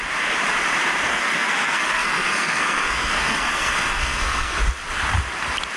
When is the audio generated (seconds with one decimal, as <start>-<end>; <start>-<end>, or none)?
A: 1.1-4.6